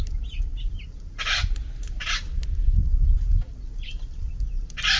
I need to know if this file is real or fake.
real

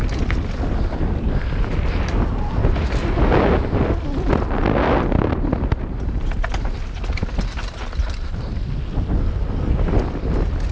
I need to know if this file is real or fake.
real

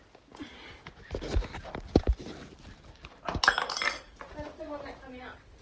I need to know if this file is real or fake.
real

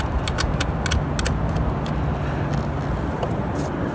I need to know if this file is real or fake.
real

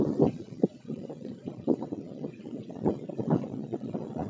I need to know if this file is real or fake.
fake